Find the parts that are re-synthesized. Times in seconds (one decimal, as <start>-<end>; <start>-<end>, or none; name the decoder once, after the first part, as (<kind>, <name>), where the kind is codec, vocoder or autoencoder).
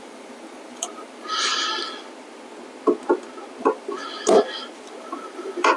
0.0-1.5 (vocoder, BigVGAN v2); 5.0-5.8